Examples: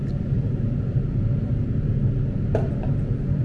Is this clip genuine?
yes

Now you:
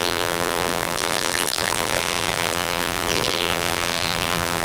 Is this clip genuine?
no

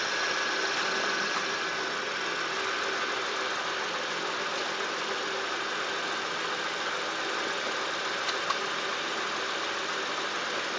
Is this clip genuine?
yes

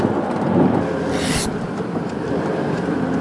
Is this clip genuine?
no